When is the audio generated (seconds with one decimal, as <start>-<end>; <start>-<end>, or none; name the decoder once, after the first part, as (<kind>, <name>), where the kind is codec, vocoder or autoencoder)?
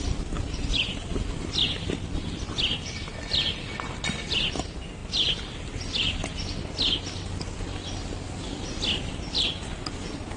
none